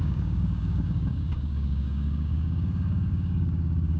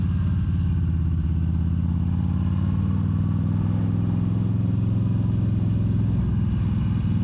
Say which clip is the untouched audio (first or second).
second